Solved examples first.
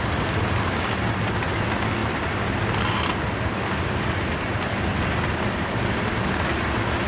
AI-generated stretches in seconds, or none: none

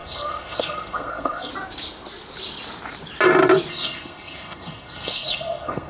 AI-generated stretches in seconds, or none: 0.0-1.5 (codec, SNAC); 3.7-5.9